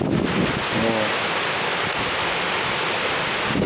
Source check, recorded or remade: recorded